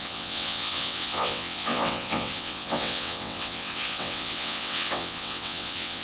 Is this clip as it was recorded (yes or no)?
no